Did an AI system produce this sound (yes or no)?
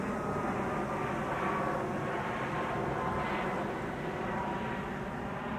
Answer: no